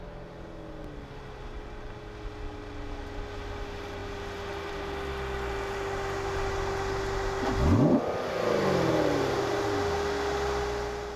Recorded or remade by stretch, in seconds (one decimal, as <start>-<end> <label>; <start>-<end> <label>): 0.0-11.2 recorded